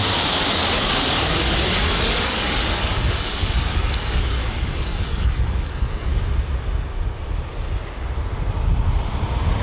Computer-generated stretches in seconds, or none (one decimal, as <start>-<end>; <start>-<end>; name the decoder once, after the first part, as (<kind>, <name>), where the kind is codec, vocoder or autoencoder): 0.5-6.1 (codec, DAC)